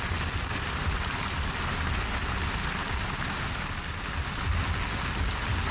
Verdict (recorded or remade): recorded